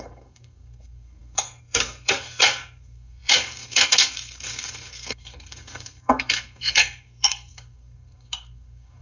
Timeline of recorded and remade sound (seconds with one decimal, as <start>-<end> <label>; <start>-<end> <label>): 0.0-9.0 remade